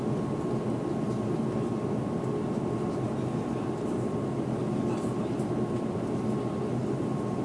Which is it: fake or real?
real